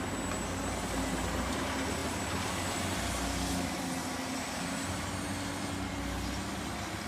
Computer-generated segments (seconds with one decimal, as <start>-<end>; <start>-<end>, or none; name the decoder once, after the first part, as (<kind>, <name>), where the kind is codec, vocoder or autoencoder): none

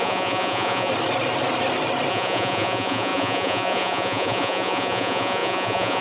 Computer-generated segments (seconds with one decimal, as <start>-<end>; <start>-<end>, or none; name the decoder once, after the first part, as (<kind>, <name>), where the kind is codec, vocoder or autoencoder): 0.0-0.9 (vocoder, Vocos); 2.1-6.0

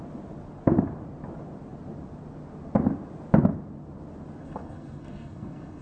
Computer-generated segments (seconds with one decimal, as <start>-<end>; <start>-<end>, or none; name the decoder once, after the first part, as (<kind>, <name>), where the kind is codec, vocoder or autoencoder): 4.4-5.8 (codec, SNAC)

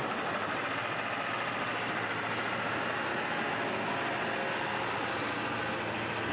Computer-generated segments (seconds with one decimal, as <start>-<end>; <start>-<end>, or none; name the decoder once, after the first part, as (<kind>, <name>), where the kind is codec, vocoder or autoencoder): 3.1-3.9 (autoencoder, DAC-VAE)